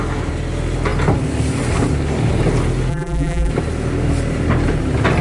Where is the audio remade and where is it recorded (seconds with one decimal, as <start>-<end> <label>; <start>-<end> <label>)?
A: 0.0-2.9 recorded; 2.9-3.5 remade; 3.5-5.2 recorded